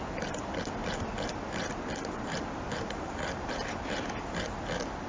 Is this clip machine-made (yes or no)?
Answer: no